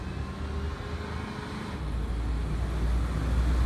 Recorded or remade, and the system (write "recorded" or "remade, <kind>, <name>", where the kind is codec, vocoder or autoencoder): recorded